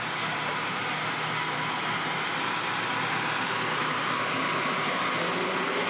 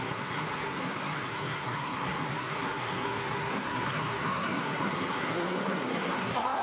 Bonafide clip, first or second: first